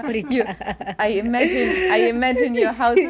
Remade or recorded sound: recorded